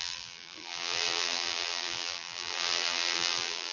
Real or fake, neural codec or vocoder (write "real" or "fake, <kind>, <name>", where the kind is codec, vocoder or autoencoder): fake, vocoder, BigVGAN v2